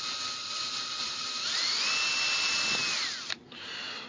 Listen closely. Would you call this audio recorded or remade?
recorded